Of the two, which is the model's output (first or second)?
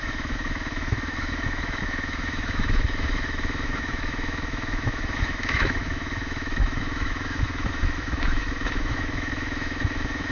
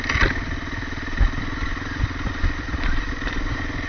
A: first